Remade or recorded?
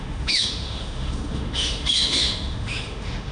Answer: remade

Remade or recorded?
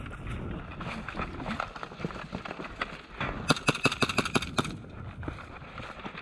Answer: recorded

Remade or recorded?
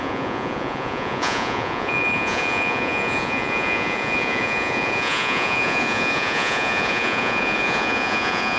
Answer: remade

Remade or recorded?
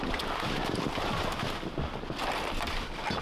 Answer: recorded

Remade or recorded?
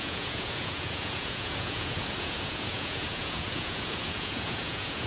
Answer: remade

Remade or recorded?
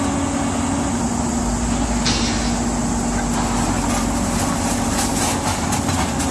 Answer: recorded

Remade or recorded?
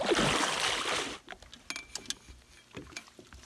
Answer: recorded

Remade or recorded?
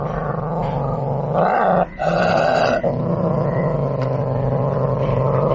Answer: recorded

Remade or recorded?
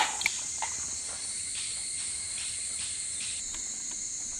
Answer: recorded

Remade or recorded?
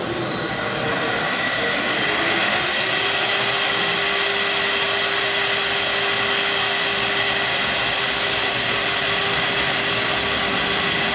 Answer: recorded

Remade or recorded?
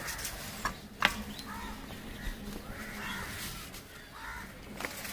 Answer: recorded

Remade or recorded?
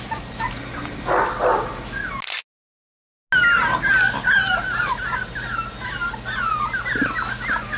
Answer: recorded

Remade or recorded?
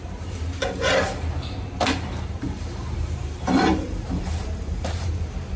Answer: remade